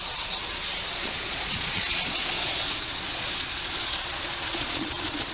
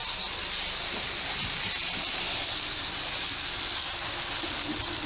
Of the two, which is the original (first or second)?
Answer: second